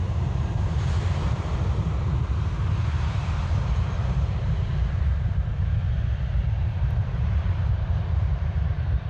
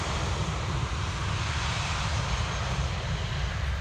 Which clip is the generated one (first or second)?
first